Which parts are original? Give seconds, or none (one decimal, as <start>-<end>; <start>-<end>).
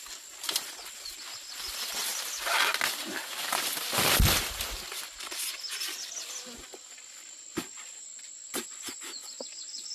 0.0-2.1; 3.1-8.1; 8.8-9.9